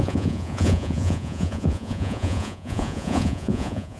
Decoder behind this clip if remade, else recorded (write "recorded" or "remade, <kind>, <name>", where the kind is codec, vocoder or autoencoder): remade, vocoder, Vocos